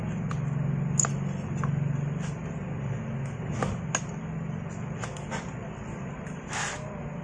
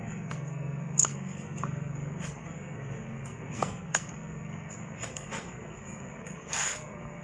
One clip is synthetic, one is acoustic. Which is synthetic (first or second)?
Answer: second